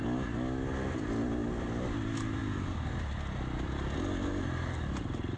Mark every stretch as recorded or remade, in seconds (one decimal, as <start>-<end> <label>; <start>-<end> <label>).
0.0-5.4 recorded